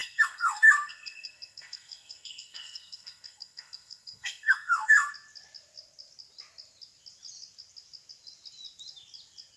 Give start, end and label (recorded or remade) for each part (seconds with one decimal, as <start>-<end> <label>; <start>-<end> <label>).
0.0-5.1 remade; 5.1-9.6 recorded